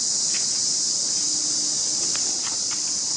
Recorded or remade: recorded